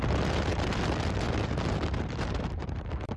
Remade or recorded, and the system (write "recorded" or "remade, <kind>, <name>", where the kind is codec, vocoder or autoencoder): remade, vocoder, BigVGAN v2